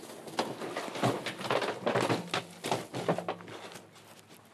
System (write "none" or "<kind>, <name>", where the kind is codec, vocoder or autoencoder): none